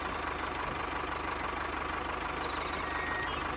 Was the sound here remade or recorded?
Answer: recorded